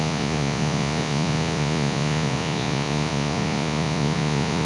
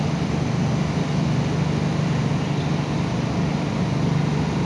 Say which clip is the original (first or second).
second